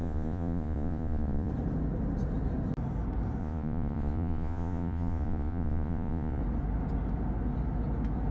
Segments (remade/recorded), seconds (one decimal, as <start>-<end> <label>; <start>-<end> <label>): 0.0-1.5 remade; 1.5-3.4 recorded; 3.4-6.4 remade; 6.4-8.3 recorded